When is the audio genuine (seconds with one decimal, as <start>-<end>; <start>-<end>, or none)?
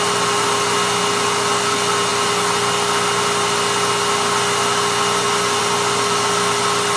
0.0-7.0